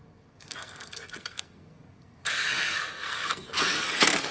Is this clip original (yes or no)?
no